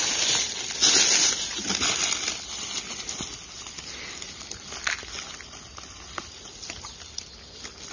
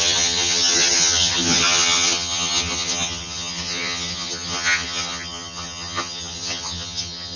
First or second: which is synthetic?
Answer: second